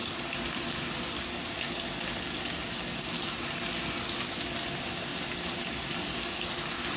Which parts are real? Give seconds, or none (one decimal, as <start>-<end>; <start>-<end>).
0.0-7.0